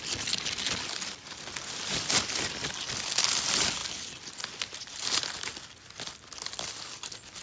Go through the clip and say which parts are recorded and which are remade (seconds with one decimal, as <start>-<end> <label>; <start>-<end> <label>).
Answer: 0.0-7.4 recorded

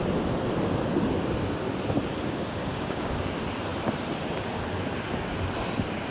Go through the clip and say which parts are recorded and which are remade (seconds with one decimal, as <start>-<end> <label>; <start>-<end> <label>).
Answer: 0.0-2.1 recorded; 2.1-3.3 remade; 3.3-6.1 recorded

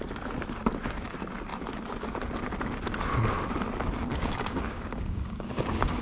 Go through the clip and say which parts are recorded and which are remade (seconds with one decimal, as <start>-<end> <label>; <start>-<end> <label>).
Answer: 0.0-4.1 recorded; 4.1-6.0 remade

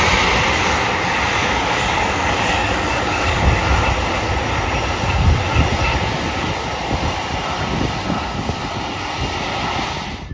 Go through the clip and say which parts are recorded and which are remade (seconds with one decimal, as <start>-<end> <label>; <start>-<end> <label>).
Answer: 0.0-1.4 recorded; 1.4-3.4 remade; 3.4-10.3 recorded